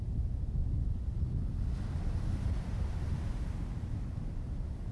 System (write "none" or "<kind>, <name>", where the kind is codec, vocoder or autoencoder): none